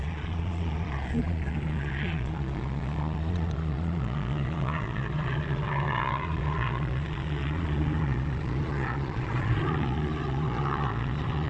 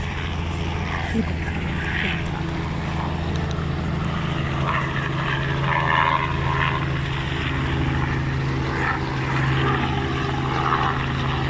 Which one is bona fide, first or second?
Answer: second